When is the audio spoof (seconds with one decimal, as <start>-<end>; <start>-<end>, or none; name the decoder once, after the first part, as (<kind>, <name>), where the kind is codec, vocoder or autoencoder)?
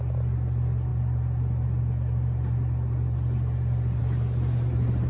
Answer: none